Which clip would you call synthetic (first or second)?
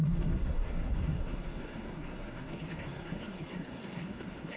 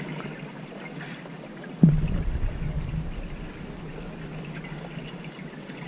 first